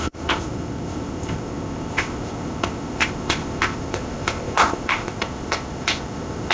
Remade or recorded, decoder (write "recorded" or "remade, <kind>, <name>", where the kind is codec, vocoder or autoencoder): remade, codec, ZipCodec